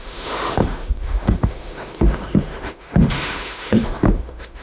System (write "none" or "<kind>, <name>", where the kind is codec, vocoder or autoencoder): autoencoder, DAC-VAE